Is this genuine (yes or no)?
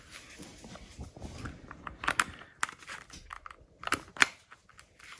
yes